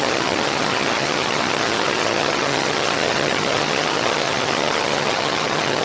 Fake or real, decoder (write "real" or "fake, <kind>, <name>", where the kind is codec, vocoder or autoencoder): fake, vocoder, HiFi-GAN